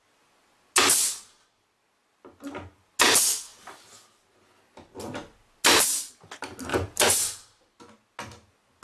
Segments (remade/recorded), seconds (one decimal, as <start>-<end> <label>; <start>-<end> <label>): 0.0-6.7 recorded; 6.7-7.2 remade; 7.2-8.8 recorded